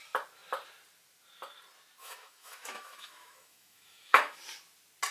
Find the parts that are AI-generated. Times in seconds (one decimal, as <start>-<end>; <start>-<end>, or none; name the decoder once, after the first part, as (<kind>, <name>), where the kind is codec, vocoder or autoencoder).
2.0-4.4 (autoencoder, DAC-VAE)

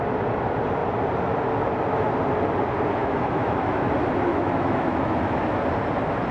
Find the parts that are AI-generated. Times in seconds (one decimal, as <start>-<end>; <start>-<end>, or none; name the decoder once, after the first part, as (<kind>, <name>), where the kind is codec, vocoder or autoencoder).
3.0-3.9 (autoencoder, DAC-VAE); 4.3-5.6

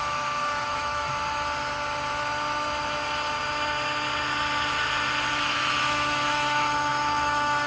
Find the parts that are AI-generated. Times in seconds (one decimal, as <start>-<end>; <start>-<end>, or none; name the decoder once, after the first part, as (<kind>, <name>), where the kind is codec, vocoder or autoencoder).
0.0-1.1 (autoencoder, DAC-VAE); 5.3-7.7

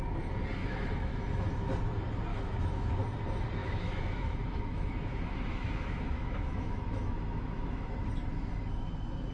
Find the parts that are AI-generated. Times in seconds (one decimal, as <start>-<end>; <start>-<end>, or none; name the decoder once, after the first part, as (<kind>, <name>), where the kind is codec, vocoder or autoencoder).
0.6-1.2 (autoencoder, DAC-VAE); 2.3-2.9; 3.6-7.9